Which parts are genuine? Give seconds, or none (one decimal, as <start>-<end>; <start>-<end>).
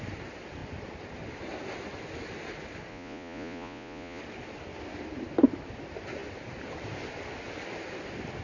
0.0-2.9; 4.2-8.4